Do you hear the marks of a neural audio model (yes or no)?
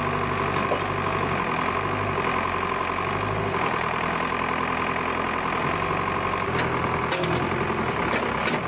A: no